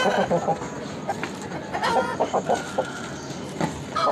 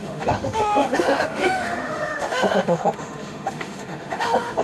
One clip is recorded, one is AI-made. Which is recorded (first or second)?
first